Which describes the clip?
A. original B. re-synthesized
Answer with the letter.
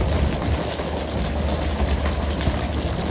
A